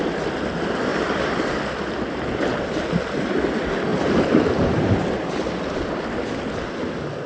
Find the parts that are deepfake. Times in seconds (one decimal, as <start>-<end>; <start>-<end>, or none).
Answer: 0.9-1.5; 3.9-5.8